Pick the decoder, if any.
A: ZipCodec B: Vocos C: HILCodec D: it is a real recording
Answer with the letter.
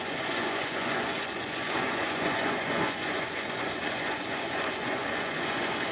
B